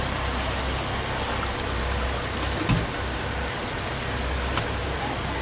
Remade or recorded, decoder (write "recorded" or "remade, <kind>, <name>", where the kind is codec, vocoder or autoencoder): recorded